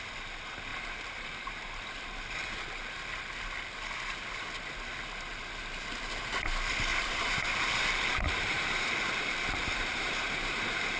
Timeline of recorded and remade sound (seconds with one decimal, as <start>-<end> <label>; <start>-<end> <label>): 0.0-0.7 recorded; 0.7-1.8 remade; 1.8-6.9 recorded; 6.9-11.0 remade